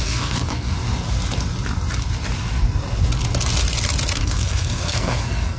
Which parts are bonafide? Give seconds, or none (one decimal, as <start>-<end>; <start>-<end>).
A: 0.8-4.2